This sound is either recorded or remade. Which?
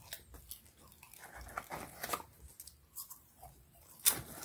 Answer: recorded